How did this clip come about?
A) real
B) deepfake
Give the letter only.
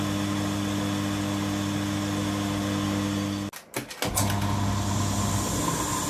A